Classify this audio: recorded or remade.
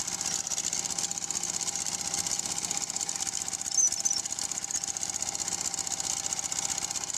recorded